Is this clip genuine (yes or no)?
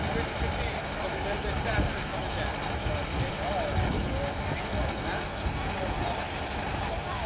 yes